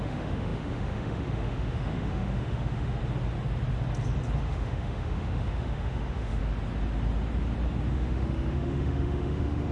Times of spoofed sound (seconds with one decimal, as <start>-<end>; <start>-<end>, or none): 0.0-3.0; 4.4-6.4; 7.9-9.7